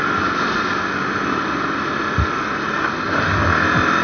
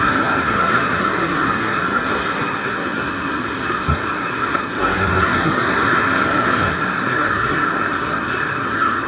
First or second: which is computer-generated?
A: second